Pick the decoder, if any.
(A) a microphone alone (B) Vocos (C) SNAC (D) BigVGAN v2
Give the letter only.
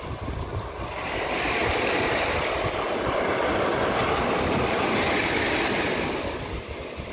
D